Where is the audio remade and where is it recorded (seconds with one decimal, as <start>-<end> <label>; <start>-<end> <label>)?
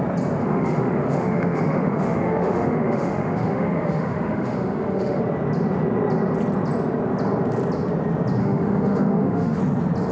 0.0-0.4 recorded; 0.4-5.2 remade; 5.2-8.4 recorded; 8.4-9.6 remade; 9.6-10.1 recorded